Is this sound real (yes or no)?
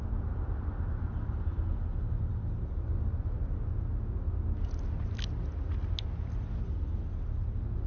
yes